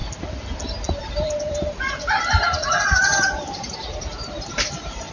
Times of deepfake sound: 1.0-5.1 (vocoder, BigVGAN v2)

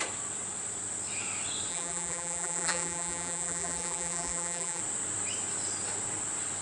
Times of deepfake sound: 1.7-4.8 (vocoder, BigVGAN v2)

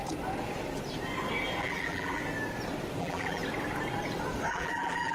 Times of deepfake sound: 1.6-2.2 (vocoder, BigVGAN v2); 3.0-3.4; 4.5-5.1

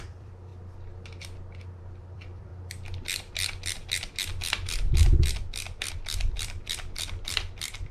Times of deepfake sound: 0.0-0.5 (vocoder, BigVGAN v2); 1.8-2.5; 5.9-7.9